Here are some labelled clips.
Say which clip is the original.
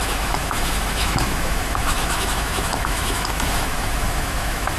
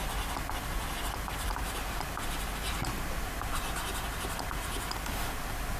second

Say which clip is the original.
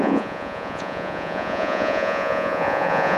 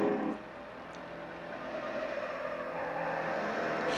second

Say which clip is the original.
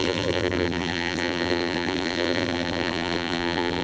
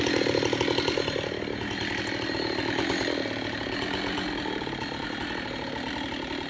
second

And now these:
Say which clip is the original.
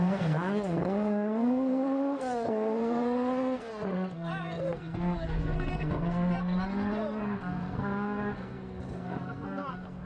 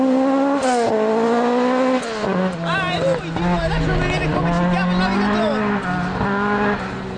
second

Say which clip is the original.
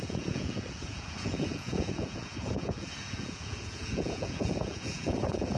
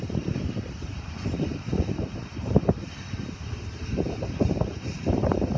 second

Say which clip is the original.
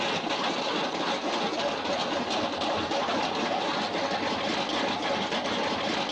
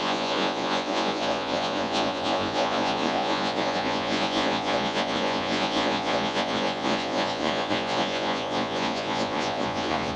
first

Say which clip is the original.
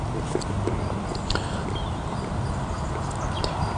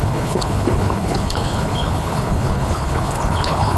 first